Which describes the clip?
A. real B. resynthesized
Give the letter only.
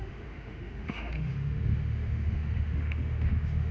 B